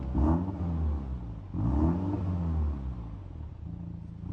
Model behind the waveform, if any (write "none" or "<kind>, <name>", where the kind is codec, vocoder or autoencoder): none